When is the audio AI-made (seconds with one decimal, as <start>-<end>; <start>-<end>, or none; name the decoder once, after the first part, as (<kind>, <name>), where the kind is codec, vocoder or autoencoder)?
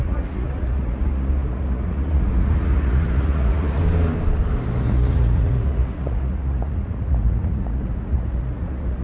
0.0-3.8 (vocoder, Vocos); 4.8-9.0